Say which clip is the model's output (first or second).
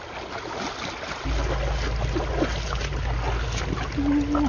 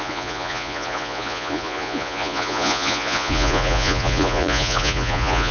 second